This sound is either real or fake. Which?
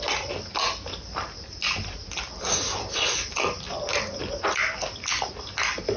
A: real